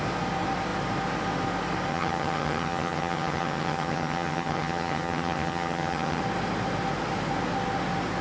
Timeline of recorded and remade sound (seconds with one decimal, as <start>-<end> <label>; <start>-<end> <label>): 0.0-1.9 recorded; 1.9-6.2 remade; 6.2-8.2 recorded